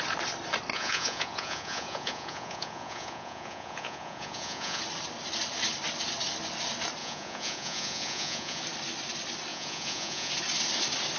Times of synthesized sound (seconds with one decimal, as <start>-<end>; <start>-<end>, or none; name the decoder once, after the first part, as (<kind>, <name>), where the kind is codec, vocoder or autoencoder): 0.7-4.8 (vocoder, Vocos); 7.0-8.6; 9.5-10.3